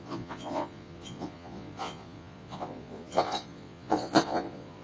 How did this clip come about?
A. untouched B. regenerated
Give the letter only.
B